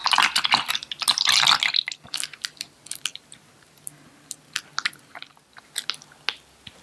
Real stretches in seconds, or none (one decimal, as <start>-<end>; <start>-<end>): 0.0-6.8